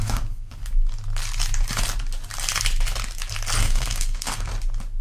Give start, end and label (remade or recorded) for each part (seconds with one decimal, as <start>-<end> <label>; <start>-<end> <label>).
0.0-0.6 remade; 0.6-3.6 recorded; 3.6-4.5 remade; 4.5-5.0 recorded